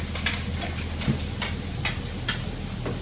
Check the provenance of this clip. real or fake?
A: real